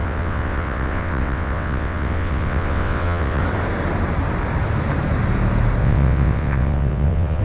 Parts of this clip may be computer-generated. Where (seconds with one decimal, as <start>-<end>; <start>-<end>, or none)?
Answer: 0.0-3.4; 5.8-7.4